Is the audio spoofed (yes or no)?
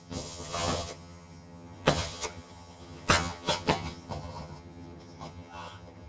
yes